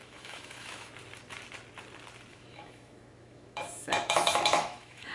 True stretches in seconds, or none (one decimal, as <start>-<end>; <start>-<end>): 0.9-2.3